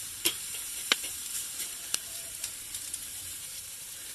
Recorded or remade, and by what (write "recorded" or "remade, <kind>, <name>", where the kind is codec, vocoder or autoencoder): remade, vocoder, BigVGAN v2